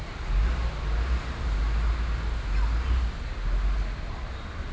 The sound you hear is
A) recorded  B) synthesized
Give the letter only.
A